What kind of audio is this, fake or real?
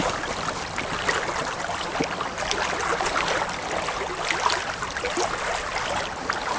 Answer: real